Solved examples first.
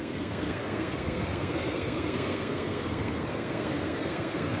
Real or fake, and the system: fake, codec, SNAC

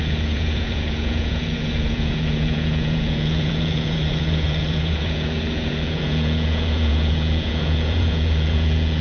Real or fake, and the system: fake, vocoder, Vocos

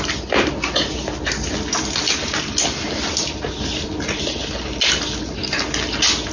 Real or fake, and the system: real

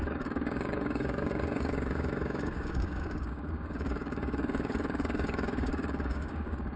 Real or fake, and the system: fake, codec, DAC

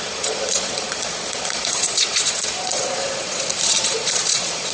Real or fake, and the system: fake, vocoder, Vocos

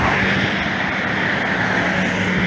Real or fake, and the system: real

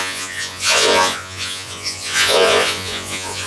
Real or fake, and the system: fake, vocoder, Vocos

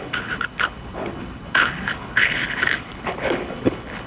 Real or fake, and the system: fake, codec, HILCodec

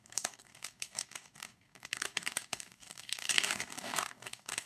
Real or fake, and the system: fake, codec, DAC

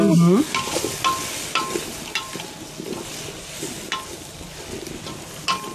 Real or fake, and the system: real